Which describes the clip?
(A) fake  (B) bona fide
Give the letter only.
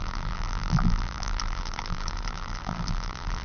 A